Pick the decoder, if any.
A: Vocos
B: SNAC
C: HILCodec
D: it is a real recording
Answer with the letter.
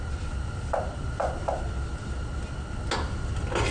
D